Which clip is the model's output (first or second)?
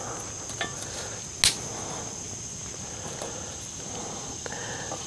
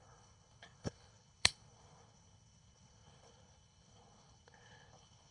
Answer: second